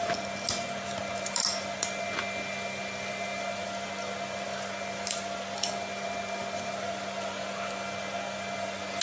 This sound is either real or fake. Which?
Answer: real